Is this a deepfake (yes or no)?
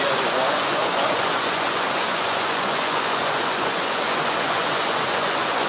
yes